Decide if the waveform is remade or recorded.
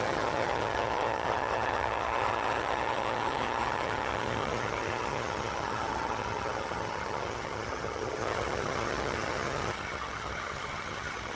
remade